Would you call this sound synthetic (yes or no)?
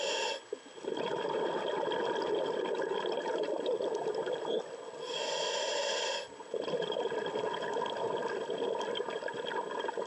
no